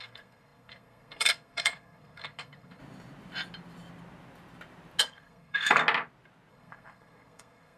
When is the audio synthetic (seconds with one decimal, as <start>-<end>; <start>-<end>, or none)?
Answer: 0.0-2.8; 5.0-5.8; 6.5-7.8

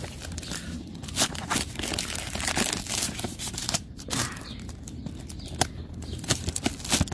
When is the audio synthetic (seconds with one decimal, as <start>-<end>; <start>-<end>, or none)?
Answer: 3.0-4.5